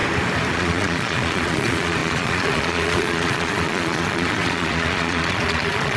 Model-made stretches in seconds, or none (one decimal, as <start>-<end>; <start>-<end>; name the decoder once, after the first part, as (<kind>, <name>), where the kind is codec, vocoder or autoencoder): 0.5-6.0 (vocoder, Vocos)